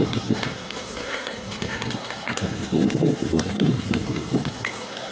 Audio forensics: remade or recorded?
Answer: remade